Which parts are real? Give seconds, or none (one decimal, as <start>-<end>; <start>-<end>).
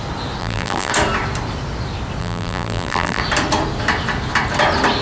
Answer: 0.0-0.4; 0.9-2.2; 3.2-5.0